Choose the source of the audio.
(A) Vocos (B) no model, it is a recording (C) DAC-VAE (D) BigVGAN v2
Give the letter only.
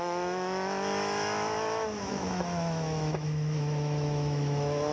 C